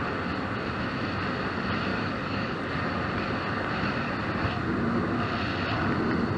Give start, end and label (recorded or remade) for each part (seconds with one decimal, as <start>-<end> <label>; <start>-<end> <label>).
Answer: 0.0-1.9 recorded; 1.9-2.8 remade; 2.8-6.4 recorded